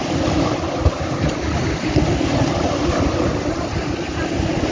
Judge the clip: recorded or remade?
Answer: recorded